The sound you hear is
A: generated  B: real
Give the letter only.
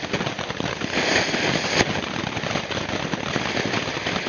B